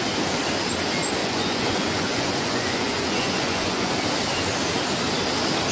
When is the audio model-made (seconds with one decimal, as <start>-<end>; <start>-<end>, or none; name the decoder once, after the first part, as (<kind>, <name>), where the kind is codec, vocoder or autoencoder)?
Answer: 1.2-3.9 (vocoder, Vocos)